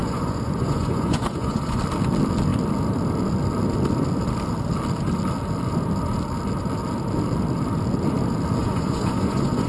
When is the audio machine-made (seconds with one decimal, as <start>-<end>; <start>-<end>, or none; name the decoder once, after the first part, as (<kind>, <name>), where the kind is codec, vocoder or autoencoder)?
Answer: 0.0-1.8 (vocoder, Vocos); 8.6-9.7